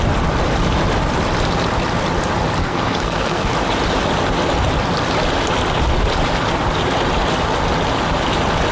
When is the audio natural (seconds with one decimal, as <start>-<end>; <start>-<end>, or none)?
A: 0.0-2.6; 3.5-8.7